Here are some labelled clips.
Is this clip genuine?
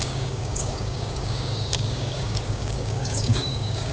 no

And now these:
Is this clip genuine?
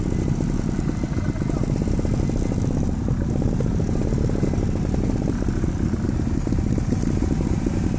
yes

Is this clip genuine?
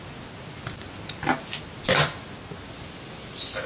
yes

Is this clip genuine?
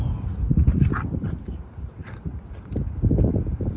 yes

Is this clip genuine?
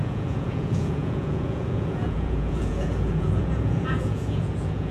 no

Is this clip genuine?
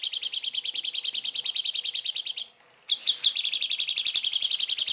yes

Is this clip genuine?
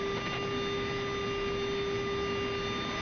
yes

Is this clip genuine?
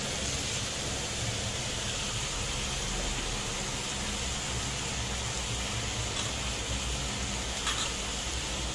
yes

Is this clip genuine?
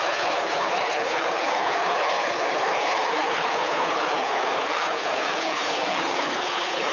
no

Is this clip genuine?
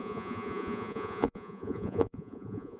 no